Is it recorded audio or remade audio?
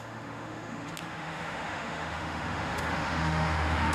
remade